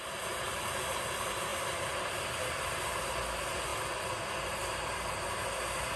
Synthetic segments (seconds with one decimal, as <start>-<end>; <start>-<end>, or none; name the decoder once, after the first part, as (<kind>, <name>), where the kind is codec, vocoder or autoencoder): none